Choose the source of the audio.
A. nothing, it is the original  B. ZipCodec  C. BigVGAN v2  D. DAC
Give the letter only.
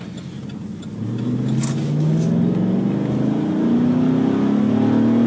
A